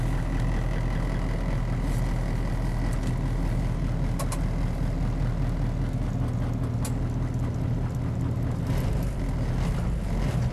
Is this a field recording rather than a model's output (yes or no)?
yes